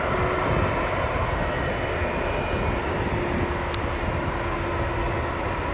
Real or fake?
real